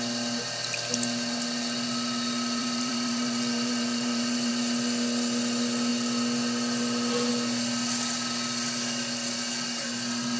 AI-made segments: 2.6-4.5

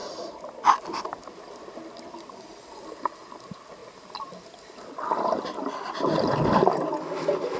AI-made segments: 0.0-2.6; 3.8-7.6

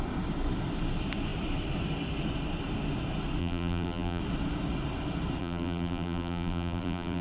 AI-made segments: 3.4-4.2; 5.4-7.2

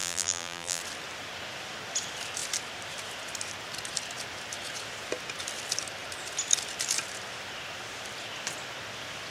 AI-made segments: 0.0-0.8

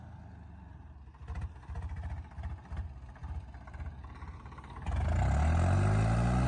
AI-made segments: none